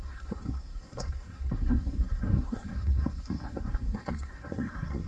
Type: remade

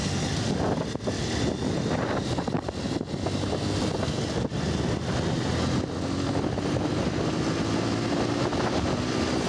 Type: recorded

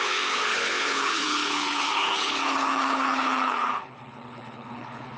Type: remade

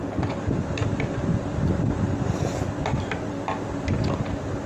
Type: recorded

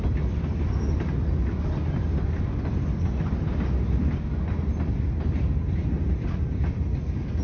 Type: recorded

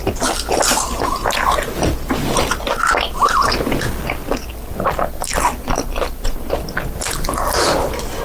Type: recorded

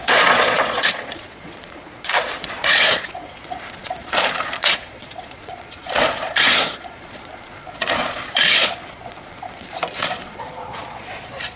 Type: remade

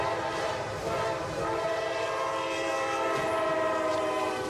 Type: remade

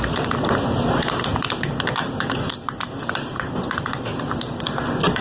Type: recorded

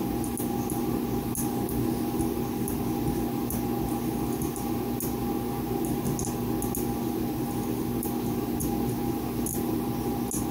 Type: recorded